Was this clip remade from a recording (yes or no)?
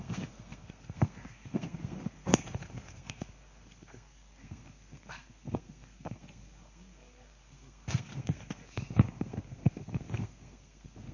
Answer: yes